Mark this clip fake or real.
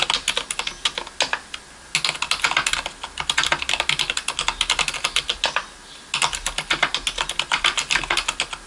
real